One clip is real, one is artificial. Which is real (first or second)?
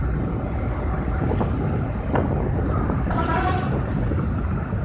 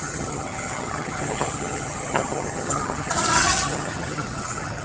first